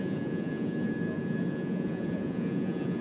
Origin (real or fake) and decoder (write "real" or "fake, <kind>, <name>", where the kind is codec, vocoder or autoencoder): fake, vocoder, Vocos